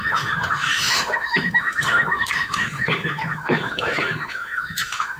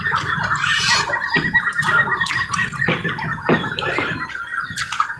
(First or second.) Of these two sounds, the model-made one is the first